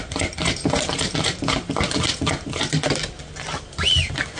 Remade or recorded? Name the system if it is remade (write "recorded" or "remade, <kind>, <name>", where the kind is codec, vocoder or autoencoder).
recorded